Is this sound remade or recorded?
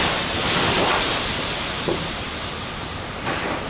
remade